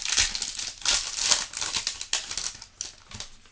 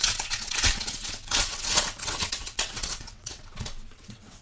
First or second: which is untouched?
first